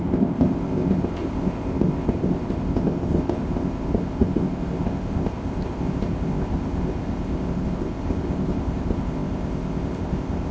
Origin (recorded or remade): remade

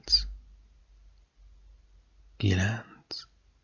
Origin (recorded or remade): recorded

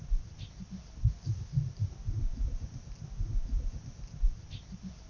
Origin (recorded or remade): recorded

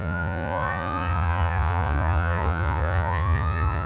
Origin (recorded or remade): remade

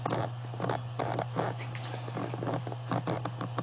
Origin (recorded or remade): recorded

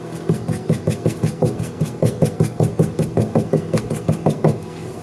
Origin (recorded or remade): remade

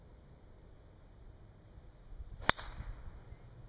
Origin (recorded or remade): recorded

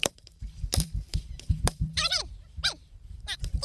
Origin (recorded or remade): remade